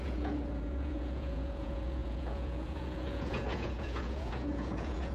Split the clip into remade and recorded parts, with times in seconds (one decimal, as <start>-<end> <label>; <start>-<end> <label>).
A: 0.0-5.1 remade